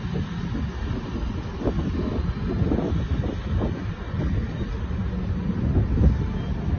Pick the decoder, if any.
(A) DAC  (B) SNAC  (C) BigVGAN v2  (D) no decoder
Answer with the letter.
D